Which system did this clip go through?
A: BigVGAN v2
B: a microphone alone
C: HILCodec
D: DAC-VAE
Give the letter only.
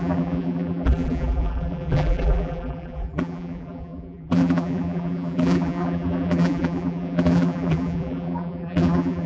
A